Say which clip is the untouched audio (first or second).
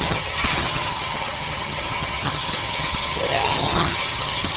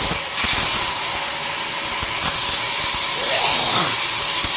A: second